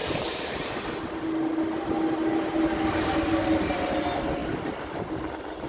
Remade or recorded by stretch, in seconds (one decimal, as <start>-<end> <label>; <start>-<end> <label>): 0.0-0.9 remade; 0.9-5.7 recorded

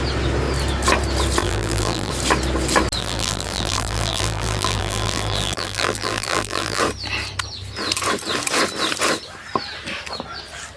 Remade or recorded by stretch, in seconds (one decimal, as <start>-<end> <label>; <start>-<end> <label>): 0.0-1.4 recorded; 1.4-2.1 remade; 2.1-3.0 recorded; 3.0-6.8 remade; 6.8-10.8 recorded

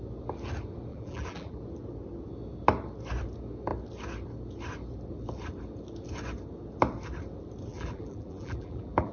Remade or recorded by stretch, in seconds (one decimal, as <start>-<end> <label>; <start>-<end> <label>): 0.0-0.9 recorded; 0.9-1.6 remade; 1.6-7.7 recorded; 7.7-9.1 remade

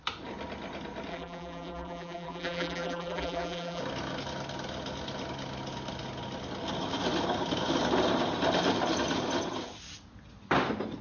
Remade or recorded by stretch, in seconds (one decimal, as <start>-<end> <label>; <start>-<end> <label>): 0.0-1.1 recorded; 1.1-3.8 remade; 3.8-11.0 recorded

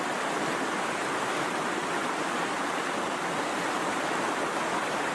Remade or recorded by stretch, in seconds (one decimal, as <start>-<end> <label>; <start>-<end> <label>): 0.0-0.5 recorded; 0.5-1.3 remade; 1.3-5.1 recorded

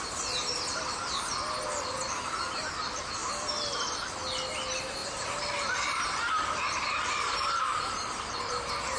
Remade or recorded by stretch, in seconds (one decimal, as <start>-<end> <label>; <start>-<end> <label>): 0.0-3.2 recorded; 3.2-4.0 remade; 4.0-5.0 recorded; 5.0-8.5 remade; 8.5-9.0 recorded